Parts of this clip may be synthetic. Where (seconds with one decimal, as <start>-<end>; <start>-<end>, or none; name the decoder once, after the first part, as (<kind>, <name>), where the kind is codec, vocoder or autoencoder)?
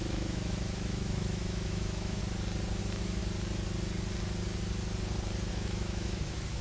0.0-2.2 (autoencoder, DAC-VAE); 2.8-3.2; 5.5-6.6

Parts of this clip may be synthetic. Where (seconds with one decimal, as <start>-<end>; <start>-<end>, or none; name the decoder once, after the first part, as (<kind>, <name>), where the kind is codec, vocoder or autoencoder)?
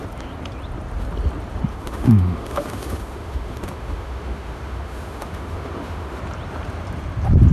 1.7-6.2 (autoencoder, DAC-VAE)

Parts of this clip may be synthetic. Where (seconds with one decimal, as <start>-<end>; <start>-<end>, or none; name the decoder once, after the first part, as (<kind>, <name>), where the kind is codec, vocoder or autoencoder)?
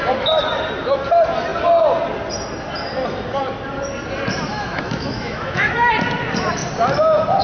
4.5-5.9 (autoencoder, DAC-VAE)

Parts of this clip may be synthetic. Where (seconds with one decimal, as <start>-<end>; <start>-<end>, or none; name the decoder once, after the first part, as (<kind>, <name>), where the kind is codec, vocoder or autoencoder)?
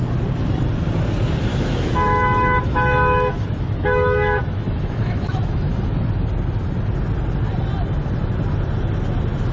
1.5-6.1 (autoencoder, DAC-VAE)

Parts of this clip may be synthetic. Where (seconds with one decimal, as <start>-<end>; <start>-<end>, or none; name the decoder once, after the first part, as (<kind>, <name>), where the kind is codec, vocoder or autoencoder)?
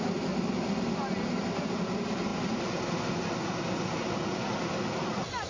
none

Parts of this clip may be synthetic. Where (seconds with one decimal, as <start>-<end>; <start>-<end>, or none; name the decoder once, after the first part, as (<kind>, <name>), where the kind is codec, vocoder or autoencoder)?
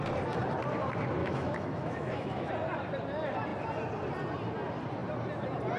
1.2-2.5 (autoencoder, DAC-VAE)